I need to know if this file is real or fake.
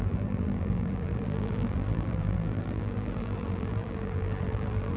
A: fake